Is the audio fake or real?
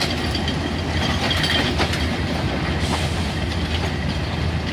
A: real